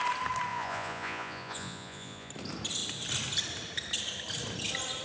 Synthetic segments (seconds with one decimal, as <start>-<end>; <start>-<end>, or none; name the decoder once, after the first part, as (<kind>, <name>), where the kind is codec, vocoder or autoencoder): 0.5-2.3 (vocoder, Vocos)